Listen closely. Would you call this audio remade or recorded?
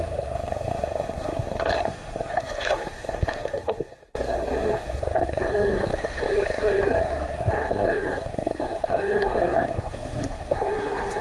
remade